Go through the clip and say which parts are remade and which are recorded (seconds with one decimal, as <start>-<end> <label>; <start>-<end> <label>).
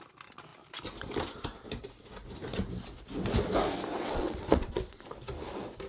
0.0-3.9 recorded; 3.9-5.0 remade; 5.0-5.9 recorded